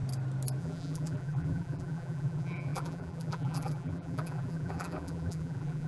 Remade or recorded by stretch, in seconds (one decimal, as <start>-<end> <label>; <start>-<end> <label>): 0.0-0.6 recorded; 0.6-5.9 remade